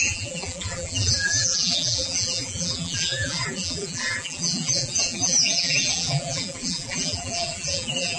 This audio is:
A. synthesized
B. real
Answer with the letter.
A